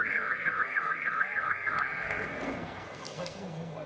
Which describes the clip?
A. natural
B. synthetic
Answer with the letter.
B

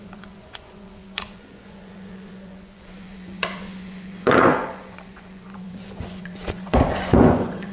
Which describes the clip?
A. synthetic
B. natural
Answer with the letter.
A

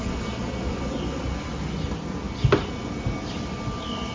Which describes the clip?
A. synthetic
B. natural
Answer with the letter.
B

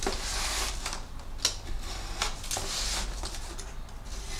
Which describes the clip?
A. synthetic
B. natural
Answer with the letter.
B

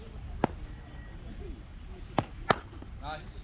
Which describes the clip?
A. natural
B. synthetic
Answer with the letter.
A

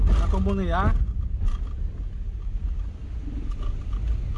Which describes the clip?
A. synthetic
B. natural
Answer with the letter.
B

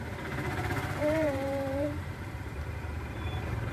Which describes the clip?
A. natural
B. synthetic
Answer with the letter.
B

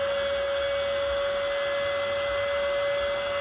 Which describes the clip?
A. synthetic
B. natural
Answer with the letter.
B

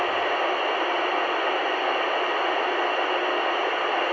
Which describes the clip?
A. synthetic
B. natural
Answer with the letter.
B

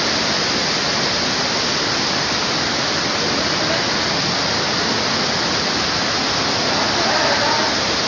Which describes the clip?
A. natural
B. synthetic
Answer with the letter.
A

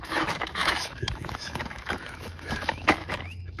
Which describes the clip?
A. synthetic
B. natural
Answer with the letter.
A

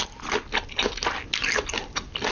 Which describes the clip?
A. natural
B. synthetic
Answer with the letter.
A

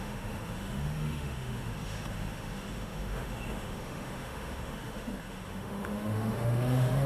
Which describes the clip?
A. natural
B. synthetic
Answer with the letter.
B